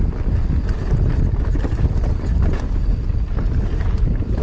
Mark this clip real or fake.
real